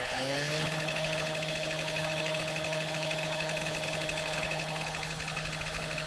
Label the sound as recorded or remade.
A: remade